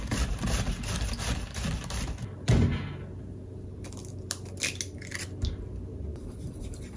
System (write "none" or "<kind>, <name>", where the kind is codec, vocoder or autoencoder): none